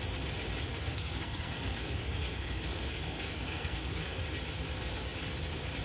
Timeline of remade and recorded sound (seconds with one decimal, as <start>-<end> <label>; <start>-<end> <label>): 0.0-0.7 recorded; 0.7-4.2 remade; 4.2-5.8 recorded